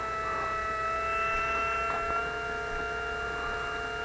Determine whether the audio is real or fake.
real